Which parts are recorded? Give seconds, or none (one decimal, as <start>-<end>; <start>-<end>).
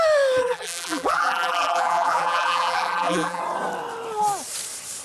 0.0-0.4; 3.4-5.0